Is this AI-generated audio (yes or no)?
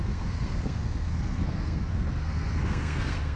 yes